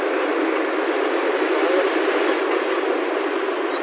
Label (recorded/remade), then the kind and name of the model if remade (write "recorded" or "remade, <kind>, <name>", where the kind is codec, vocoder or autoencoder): recorded